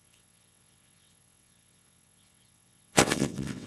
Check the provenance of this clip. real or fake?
fake